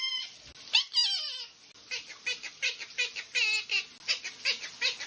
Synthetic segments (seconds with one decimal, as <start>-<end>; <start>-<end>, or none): none